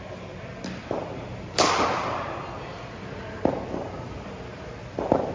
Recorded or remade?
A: recorded